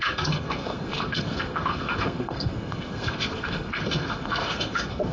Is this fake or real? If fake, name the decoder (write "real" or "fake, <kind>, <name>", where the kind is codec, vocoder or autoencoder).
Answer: fake, codec, SNAC